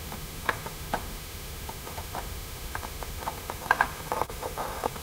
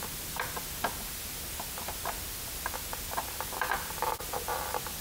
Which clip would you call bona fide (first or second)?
second